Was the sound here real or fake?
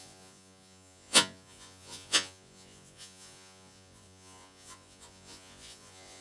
fake